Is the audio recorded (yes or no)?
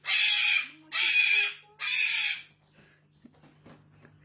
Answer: yes